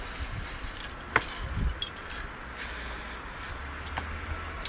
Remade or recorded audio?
recorded